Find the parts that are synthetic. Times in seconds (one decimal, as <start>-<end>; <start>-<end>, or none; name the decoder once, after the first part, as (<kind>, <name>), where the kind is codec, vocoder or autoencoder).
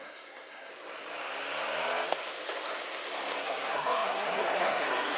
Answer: 0.0-0.7 (codec, SNAC); 3.4-5.2